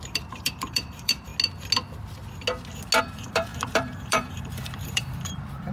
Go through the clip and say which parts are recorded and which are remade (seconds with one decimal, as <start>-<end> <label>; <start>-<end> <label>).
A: 0.0-1.3 remade; 1.3-3.0 recorded; 3.0-5.7 remade